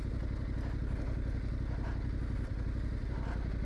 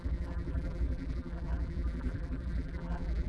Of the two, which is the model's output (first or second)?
second